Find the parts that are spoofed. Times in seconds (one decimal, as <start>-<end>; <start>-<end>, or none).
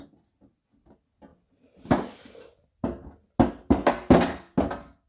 none